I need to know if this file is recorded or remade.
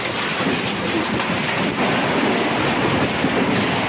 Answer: recorded